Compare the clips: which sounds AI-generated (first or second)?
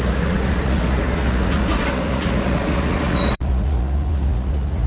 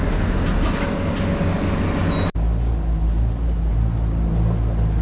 first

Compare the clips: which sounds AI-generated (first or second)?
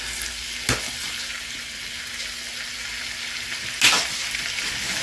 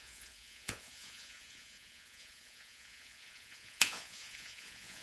second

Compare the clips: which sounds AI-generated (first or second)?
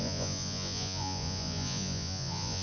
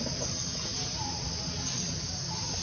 first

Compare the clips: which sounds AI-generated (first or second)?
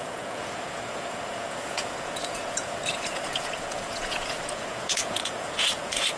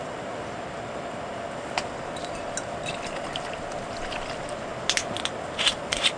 first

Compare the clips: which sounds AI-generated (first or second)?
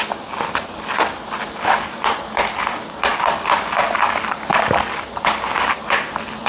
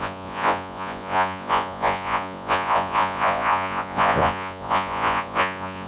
second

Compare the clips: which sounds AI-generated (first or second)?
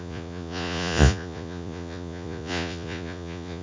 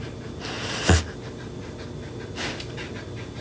first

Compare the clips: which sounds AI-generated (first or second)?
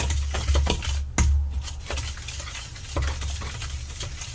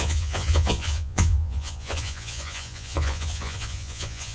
second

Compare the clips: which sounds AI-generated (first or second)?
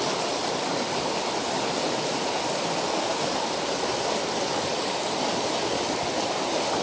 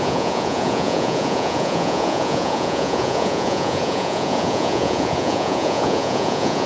second